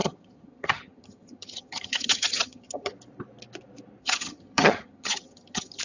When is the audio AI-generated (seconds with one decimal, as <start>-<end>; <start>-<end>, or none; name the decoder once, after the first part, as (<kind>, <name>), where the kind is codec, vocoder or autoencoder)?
0.0-2.9 (vocoder, HiFi-GAN); 4.0-5.8